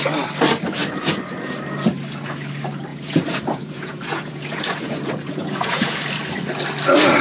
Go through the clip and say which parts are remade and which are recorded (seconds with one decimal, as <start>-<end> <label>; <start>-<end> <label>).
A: 0.0-2.9 recorded; 2.9-6.1 remade; 6.1-7.2 recorded

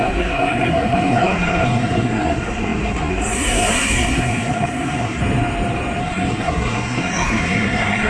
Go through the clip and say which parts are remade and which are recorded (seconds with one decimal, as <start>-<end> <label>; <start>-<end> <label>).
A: 0.0-5.2 remade; 5.2-6.0 recorded; 6.0-8.1 remade

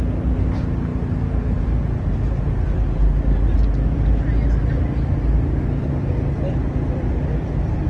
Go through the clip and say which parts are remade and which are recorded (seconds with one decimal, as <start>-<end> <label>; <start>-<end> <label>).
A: 0.0-7.9 recorded

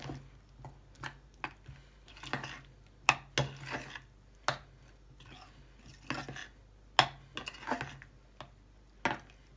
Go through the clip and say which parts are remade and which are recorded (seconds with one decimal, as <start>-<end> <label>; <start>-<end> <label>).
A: 0.0-9.6 recorded